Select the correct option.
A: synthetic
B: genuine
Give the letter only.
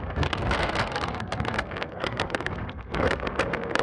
A